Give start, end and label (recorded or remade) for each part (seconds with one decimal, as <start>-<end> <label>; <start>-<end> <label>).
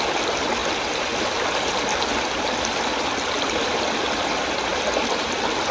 0.0-5.7 recorded